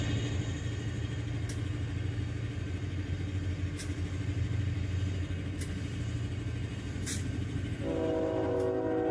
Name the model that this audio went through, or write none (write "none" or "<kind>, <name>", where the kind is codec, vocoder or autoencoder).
none